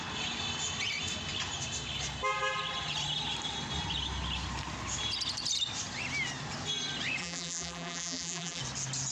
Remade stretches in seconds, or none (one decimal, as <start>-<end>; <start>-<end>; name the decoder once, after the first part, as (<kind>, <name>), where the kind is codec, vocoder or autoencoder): 7.2-8.6 (vocoder, BigVGAN v2)